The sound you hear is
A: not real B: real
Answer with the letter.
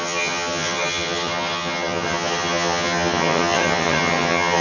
A